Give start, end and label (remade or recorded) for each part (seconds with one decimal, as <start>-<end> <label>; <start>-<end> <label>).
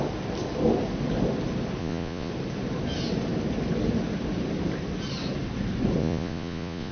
0.0-1.8 recorded; 1.8-2.3 remade; 2.3-6.0 recorded; 6.0-6.9 remade